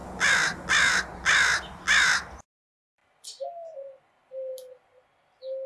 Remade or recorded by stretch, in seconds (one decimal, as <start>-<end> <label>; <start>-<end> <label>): 0.0-5.7 recorded